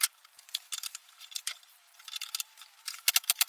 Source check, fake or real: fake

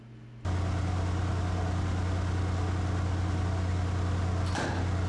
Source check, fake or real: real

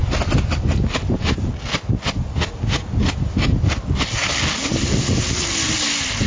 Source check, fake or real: real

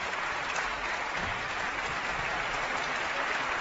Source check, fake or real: real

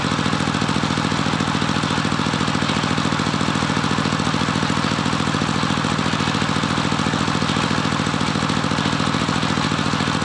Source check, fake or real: real